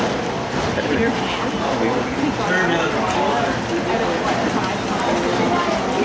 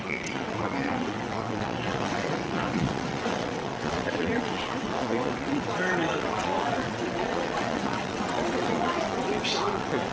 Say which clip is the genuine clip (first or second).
first